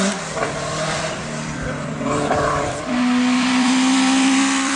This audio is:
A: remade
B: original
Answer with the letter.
A